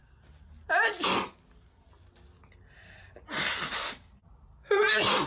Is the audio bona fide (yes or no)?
yes